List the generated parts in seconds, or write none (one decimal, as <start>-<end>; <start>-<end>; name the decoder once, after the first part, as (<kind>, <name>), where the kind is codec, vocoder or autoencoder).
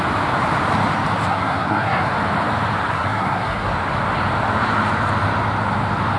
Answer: 1.3-2.1 (codec, SNAC); 2.9-3.7